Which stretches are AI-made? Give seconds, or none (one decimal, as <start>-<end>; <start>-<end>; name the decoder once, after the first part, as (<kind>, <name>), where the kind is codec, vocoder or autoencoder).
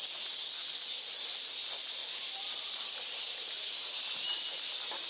none